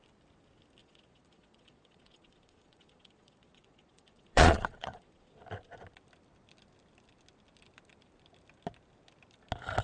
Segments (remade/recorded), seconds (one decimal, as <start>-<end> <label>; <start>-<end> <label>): 0.0-0.8 recorded; 0.8-5.4 remade; 5.4-9.8 recorded